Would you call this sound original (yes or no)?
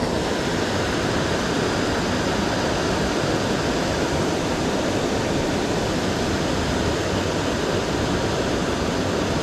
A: yes